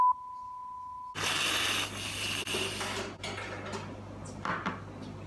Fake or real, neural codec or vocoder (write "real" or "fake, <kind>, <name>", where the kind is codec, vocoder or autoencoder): real